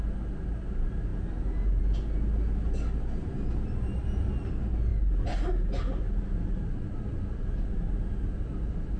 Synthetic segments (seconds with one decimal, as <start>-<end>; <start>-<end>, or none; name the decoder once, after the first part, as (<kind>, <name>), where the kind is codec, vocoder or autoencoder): none